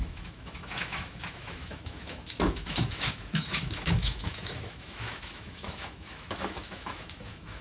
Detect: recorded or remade remade